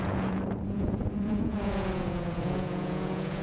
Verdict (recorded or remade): remade